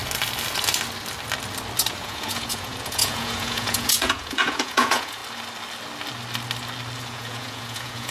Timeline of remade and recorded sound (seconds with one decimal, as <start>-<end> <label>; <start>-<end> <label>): 0.0-1.9 recorded; 1.9-5.2 remade; 5.2-7.1 recorded; 7.1-8.1 remade